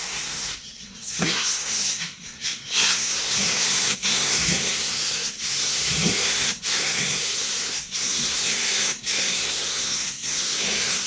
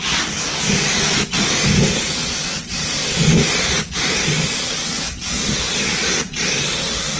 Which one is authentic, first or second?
second